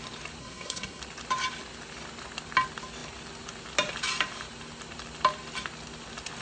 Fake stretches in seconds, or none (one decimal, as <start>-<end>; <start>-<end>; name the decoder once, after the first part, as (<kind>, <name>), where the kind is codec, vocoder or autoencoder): 0.4-1.0 (codec, SNAC)